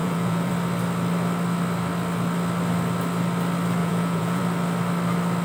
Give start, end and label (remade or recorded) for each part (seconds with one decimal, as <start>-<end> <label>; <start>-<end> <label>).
0.0-0.5 remade; 0.5-3.8 recorded; 3.8-4.4 remade; 4.4-5.4 recorded